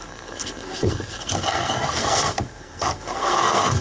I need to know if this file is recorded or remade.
remade